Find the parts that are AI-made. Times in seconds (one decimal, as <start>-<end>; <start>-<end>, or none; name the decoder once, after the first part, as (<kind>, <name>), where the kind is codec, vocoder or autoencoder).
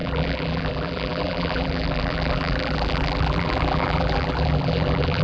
0.0-5.2 (vocoder, BigVGAN v2)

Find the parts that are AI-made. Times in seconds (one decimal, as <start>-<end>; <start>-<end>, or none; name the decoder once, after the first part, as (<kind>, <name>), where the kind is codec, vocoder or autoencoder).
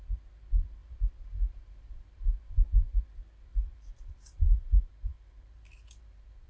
0.8-2.3 (vocoder, BigVGAN v2); 3.5-6.5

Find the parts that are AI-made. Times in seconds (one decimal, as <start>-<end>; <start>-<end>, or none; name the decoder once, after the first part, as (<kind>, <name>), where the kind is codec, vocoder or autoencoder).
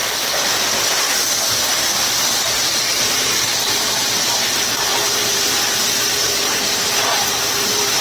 2.2-8.0 (vocoder, BigVGAN v2)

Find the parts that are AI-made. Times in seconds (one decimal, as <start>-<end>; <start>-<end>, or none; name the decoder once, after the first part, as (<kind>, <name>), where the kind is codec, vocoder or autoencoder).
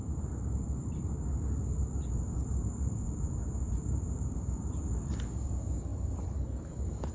0.0-7.1 (vocoder, BigVGAN v2)